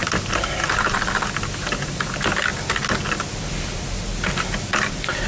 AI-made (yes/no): no